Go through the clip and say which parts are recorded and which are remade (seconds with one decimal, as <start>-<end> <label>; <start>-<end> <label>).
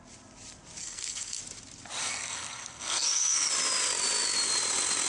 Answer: 0.0-0.8 recorded; 0.8-1.4 remade; 1.4-2.0 recorded; 2.0-3.5 remade; 3.5-5.1 recorded